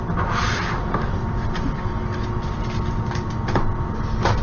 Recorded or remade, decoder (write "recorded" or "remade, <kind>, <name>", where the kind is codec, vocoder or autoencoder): recorded